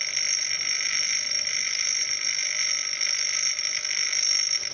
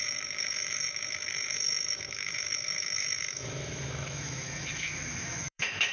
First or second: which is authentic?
first